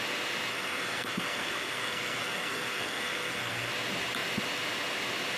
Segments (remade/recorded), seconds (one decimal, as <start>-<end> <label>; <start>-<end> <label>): 0.0-0.5 recorded; 0.5-3.7 remade; 3.7-5.4 recorded